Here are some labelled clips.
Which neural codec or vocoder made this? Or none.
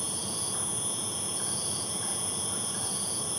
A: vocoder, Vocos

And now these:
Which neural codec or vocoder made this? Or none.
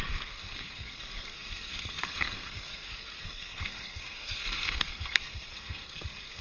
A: codec, SNAC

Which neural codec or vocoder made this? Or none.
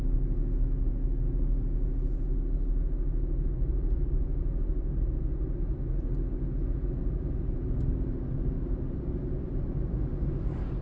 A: none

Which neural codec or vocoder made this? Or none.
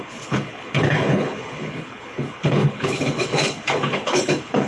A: codec, HILCodec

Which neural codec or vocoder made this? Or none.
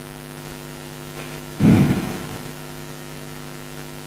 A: autoencoder, DAC-VAE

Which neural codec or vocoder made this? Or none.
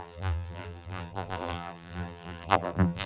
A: vocoder, BigVGAN v2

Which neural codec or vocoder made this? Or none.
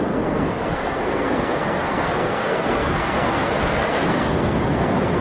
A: codec, SNAC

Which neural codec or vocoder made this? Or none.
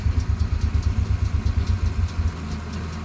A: none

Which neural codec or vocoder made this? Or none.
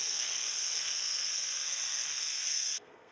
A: codec, SNAC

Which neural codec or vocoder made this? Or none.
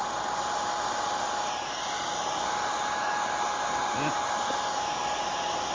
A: none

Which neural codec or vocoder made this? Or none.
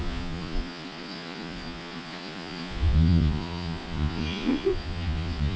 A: vocoder, Vocos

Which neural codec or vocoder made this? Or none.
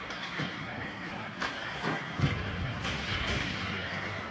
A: codec, SNAC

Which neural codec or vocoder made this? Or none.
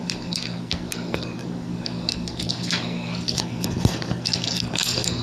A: codec, SNAC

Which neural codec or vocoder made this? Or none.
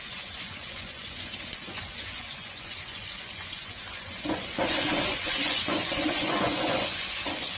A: vocoder, Vocos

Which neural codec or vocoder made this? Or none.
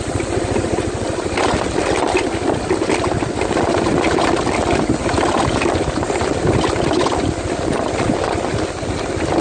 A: none